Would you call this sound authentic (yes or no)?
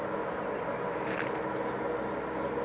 yes